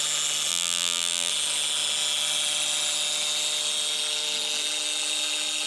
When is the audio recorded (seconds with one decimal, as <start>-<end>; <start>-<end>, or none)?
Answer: 0.0-0.5; 1.3-5.7